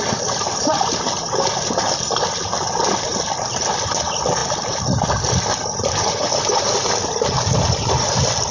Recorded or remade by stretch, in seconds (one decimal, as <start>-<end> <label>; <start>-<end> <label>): 0.0-8.5 recorded